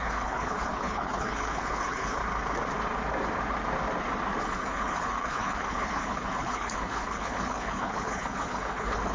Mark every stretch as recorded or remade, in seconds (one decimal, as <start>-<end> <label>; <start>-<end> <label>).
0.0-2.2 remade; 2.2-4.4 recorded; 4.4-9.1 remade